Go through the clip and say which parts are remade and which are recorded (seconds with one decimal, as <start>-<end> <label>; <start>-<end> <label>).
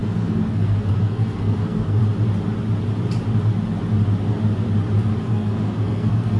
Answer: 0.0-2.0 remade; 2.0-5.2 recorded; 5.2-6.4 remade